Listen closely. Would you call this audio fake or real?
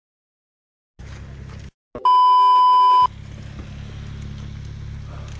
real